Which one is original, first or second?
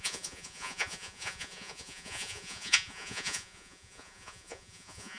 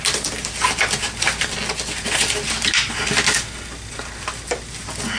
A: second